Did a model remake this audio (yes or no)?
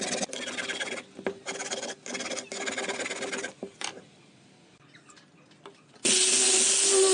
no